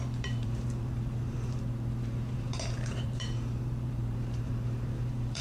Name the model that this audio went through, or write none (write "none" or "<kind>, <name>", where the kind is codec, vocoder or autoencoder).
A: vocoder, BigVGAN v2